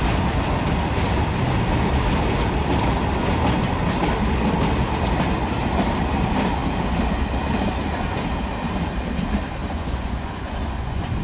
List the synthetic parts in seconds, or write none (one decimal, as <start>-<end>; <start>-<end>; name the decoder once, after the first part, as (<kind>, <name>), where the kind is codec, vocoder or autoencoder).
9.6-11.2 (vocoder, Vocos)